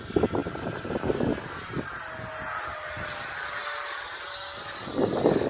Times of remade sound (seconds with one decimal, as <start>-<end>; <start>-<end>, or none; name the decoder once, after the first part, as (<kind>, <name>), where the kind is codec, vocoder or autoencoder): none